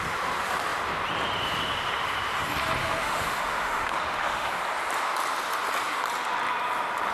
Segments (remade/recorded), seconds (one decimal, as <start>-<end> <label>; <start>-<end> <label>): 0.0-2.8 recorded; 2.8-4.6 remade; 4.6-7.1 recorded